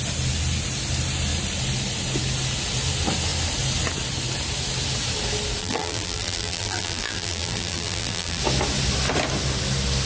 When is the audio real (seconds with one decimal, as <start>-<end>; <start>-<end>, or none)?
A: 0.0-5.6; 8.4-10.1